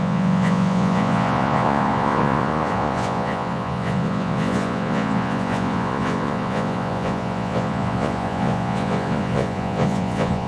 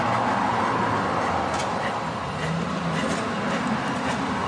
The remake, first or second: first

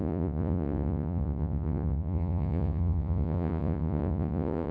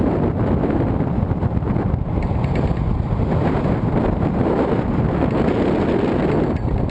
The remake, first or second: first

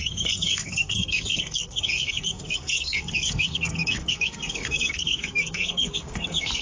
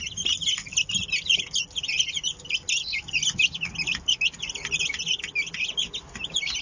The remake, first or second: first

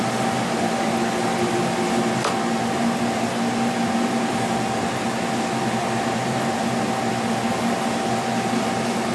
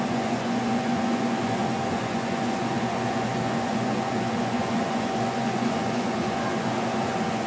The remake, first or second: second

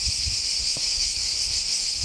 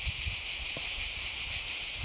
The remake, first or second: first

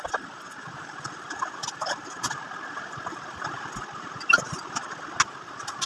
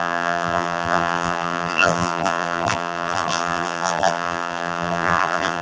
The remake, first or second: second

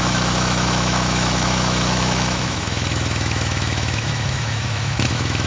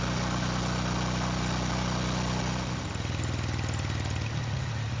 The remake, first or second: first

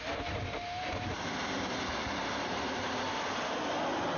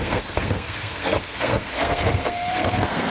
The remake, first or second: second